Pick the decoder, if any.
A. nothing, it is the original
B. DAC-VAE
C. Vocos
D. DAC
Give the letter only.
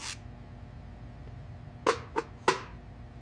A